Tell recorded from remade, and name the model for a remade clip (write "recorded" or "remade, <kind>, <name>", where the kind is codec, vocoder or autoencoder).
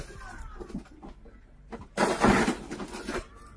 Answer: recorded